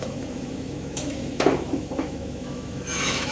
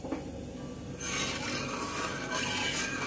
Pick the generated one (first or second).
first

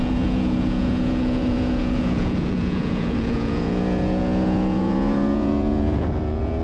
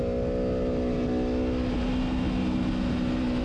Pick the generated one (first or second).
first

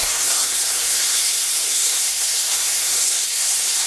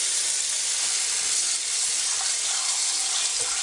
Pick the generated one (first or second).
first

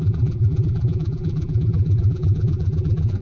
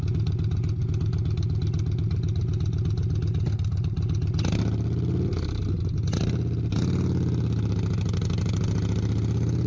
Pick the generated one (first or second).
first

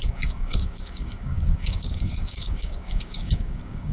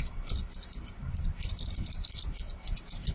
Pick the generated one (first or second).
first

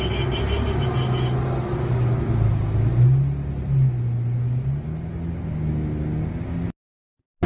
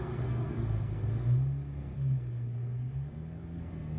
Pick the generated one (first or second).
second